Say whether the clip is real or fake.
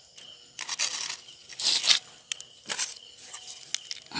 real